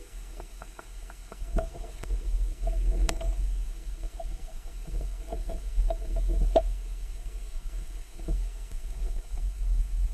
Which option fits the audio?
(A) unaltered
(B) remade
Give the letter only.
B